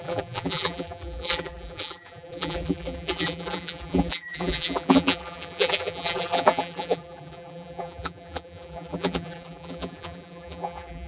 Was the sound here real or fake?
fake